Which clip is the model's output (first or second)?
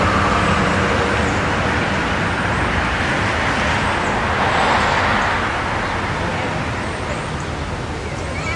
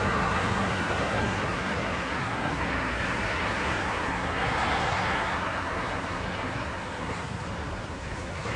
second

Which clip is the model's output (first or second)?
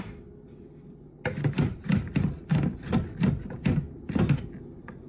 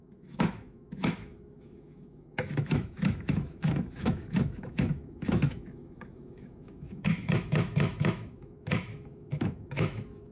second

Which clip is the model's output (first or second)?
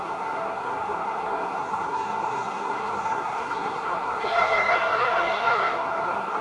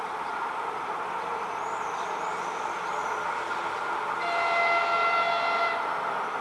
first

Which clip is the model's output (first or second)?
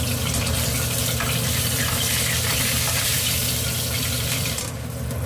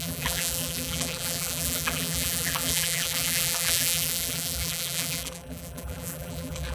second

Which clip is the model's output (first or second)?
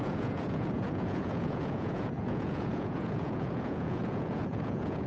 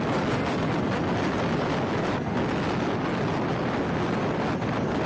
first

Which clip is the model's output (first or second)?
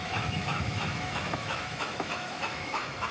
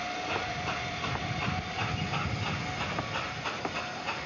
first